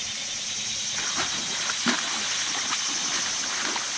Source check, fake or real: real